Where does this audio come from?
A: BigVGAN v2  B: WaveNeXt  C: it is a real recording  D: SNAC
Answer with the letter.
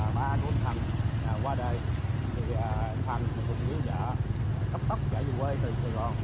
C